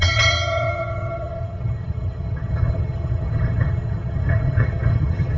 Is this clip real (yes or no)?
no